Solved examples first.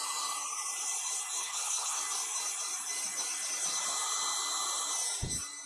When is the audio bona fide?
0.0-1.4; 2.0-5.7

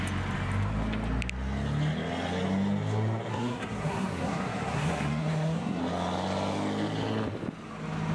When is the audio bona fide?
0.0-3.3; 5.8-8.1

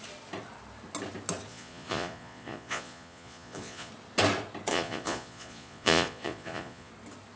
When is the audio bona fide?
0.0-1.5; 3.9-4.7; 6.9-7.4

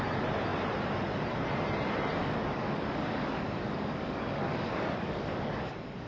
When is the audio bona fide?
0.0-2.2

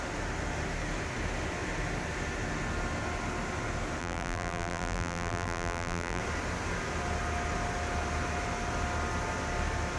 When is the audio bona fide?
0.0-4.0; 6.2-10.0